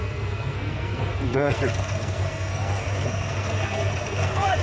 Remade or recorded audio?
remade